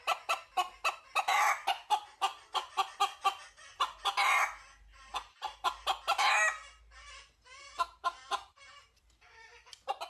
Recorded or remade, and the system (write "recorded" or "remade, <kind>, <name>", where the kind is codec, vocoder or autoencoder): recorded